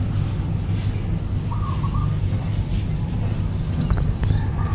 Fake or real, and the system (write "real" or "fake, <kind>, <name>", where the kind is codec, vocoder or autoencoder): real